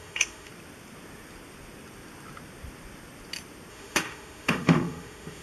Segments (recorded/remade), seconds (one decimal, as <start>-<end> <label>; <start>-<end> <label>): 0.0-0.5 remade; 0.5-3.7 recorded; 3.7-5.4 remade